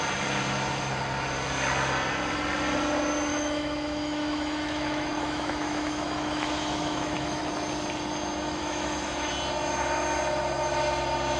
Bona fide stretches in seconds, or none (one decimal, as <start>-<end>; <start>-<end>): 0.0-3.3; 7.4-8.6; 9.3-11.4